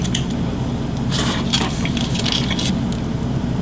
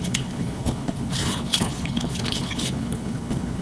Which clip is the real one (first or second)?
first